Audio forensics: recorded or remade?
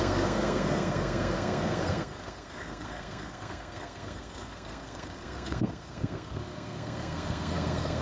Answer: remade